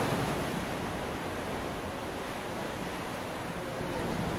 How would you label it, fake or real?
real